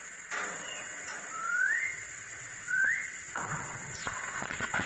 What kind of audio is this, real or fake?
fake